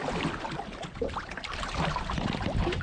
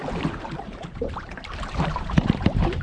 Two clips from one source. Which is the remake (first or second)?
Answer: second